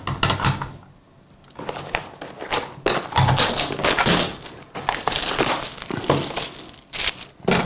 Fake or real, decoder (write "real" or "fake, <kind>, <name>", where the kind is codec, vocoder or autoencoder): real